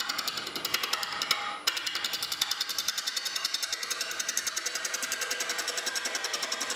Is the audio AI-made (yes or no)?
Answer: no